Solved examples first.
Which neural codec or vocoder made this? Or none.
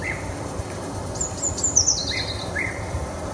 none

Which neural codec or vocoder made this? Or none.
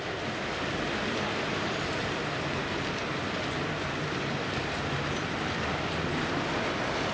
none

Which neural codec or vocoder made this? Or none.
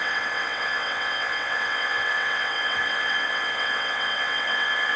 vocoder, WaveNeXt